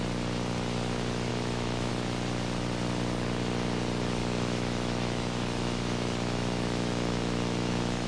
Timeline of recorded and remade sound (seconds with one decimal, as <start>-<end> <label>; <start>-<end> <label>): 0.0-1.3 recorded; 1.3-1.9 remade; 1.9-4.2 recorded; 4.2-8.1 remade